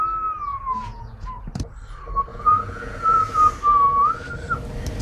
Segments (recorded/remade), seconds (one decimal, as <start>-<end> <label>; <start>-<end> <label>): 0.0-0.5 recorded; 0.5-1.5 remade; 1.5-2.3 recorded; 2.3-3.5 remade; 3.5-5.0 recorded